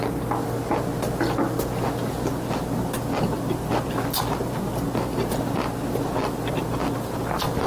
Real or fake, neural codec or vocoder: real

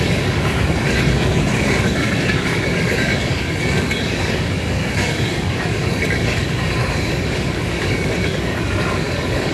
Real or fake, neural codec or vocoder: fake, codec, DAC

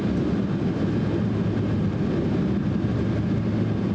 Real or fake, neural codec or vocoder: real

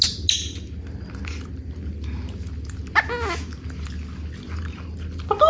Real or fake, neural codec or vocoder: real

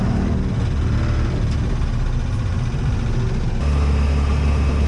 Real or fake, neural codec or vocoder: real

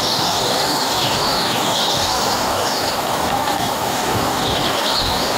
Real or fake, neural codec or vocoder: fake, codec, DAC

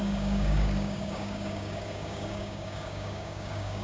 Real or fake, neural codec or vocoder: fake, codec, DAC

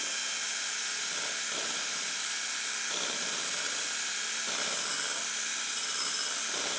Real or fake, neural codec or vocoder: real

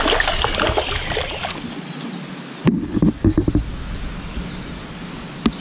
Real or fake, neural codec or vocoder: real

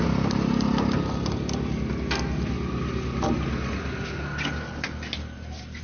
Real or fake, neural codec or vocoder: real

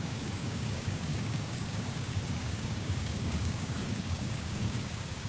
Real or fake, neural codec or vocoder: fake, codec, DAC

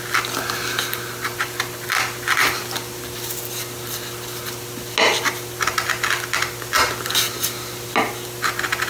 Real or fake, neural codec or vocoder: real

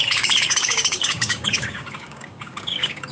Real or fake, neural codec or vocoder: fake, codec, DAC